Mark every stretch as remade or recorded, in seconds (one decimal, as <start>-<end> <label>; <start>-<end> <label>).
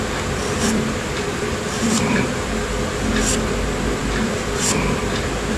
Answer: 0.0-0.4 recorded; 0.4-3.2 remade; 3.2-4.0 recorded; 4.0-5.0 remade; 5.0-5.6 recorded